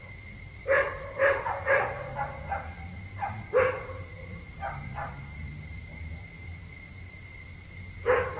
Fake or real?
fake